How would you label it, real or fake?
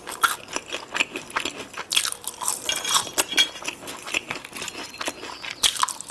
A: real